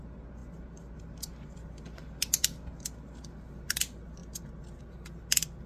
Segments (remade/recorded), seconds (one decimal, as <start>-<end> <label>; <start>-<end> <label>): 0.0-5.7 recorded